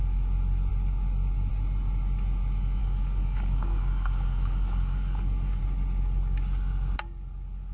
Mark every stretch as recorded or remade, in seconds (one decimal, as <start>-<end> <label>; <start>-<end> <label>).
0.0-2.8 recorded; 2.8-5.6 remade; 5.6-7.7 recorded